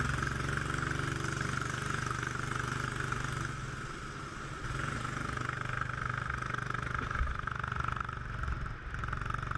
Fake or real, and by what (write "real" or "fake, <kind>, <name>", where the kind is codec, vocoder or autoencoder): real